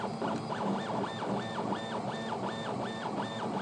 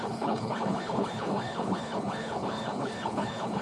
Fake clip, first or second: second